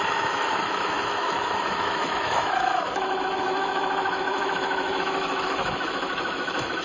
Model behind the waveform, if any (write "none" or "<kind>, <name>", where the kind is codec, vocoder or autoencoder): autoencoder, DAC-VAE